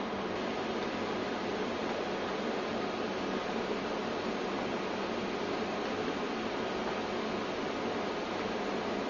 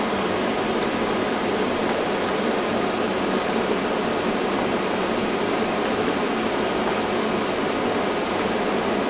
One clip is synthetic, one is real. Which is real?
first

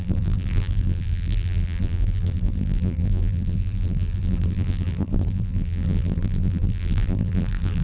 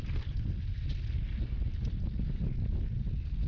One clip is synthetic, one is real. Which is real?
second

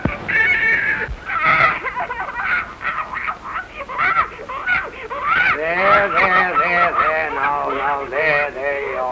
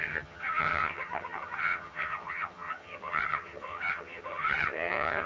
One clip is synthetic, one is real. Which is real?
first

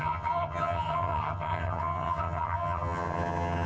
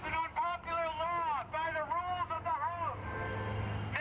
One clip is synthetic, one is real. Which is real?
second